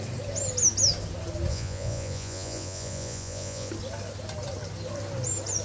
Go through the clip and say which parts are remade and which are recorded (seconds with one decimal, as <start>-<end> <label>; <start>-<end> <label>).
0.0-1.5 recorded; 1.5-3.7 remade; 3.7-5.6 recorded